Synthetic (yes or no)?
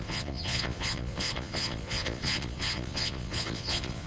yes